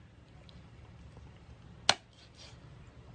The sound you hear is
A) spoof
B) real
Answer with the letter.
B